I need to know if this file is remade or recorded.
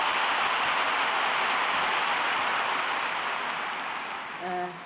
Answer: recorded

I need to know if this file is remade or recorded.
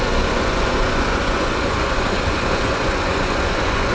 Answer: remade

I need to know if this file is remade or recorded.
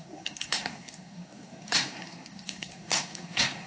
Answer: remade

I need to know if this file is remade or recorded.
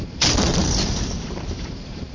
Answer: remade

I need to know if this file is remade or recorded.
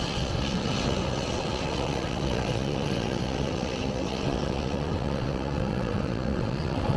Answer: remade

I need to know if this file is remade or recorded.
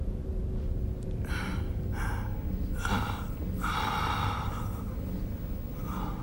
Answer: recorded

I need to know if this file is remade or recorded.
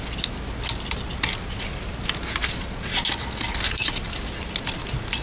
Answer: recorded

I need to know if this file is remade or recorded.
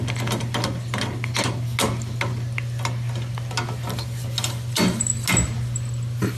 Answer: recorded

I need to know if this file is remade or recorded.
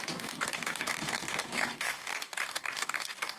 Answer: remade